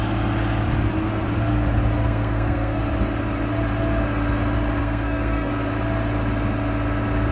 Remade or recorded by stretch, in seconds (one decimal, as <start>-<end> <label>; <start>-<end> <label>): 0.0-1.9 recorded; 1.9-2.8 remade; 2.8-4.8 recorded; 4.8-5.5 remade; 5.5-7.3 recorded